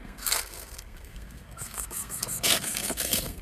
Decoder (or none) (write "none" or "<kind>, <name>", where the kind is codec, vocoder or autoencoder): codec, SNAC